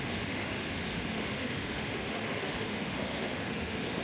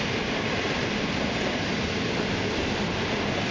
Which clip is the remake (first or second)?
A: first